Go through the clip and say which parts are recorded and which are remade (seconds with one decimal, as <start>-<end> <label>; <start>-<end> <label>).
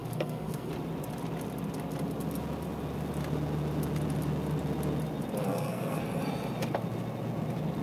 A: 0.0-0.7 remade; 0.7-5.4 recorded; 5.4-6.0 remade; 6.0-7.8 recorded